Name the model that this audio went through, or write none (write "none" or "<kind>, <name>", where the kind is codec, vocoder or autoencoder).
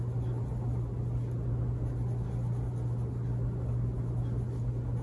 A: none